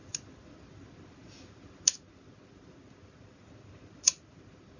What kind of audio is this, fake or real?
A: real